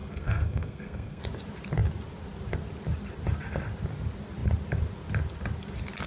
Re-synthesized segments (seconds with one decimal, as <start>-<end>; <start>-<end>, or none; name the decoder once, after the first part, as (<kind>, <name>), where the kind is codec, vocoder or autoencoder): 0.0-1.2 (codec, SNAC)